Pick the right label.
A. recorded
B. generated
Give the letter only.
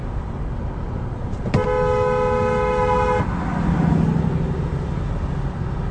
A